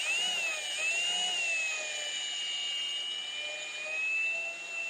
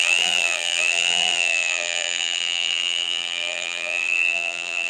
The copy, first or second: second